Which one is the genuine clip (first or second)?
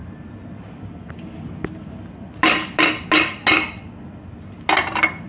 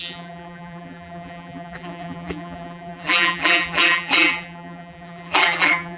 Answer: first